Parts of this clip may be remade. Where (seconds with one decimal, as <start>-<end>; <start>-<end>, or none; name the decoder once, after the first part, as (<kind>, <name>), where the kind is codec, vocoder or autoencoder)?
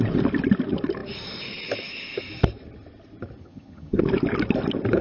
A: 3.4-4.0 (vocoder, HiFi-GAN)